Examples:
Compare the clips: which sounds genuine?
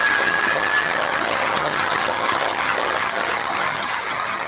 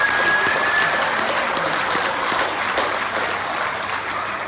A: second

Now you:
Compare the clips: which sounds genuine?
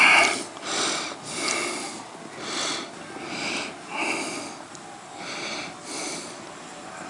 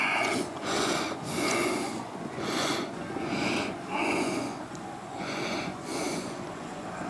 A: first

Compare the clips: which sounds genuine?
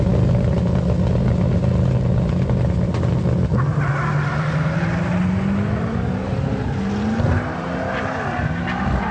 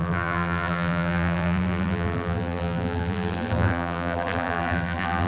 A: first